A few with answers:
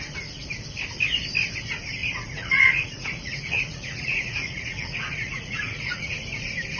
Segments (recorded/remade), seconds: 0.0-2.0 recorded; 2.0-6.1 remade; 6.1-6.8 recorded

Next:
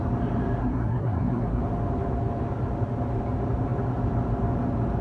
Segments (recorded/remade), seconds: 0.0-0.6 recorded; 0.6-1.6 remade; 1.6-5.0 recorded

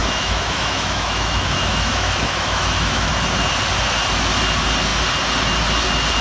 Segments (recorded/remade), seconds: 0.0-3.1 remade; 3.1-6.2 recorded

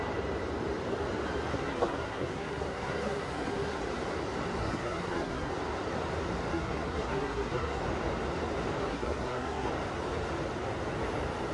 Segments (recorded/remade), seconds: 0.0-1.5 recorded; 1.5-3.8 remade; 3.8-4.6 recorded; 4.6-5.5 remade; 5.5-6.5 recorded; 6.5-7.8 remade; 7.8-8.8 recorded; 8.8-9.7 remade; 9.7-11.5 recorded